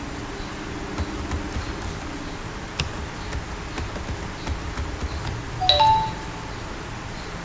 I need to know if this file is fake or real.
real